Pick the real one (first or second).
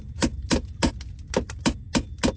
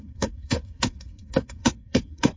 first